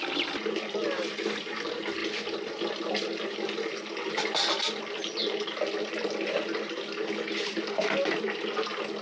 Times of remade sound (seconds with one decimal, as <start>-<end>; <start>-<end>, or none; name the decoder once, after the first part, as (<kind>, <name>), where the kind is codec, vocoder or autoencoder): 2.0-4.8 (vocoder, BigVGAN v2); 5.2-6.4